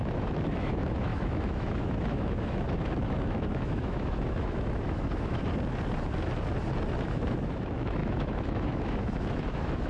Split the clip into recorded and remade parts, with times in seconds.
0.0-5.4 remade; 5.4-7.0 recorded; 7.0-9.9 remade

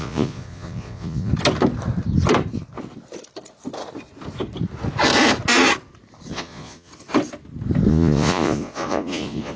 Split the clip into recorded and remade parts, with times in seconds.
0.0-1.3 remade; 1.3-6.3 recorded; 6.3-6.9 remade; 6.9-7.9 recorded; 7.9-9.6 remade

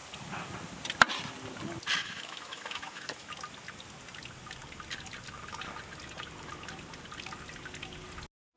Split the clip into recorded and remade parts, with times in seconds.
0.0-2.0 recorded; 2.0-3.3 remade; 3.3-8.6 recorded

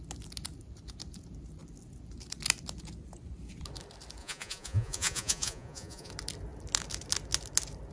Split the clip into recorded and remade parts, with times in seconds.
0.0-4.2 recorded; 4.2-6.1 remade; 6.1-7.9 recorded